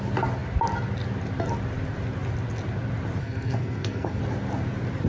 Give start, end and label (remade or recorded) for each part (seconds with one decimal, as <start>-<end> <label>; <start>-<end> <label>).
0.0-3.2 recorded; 3.2-4.2 remade; 4.2-5.1 recorded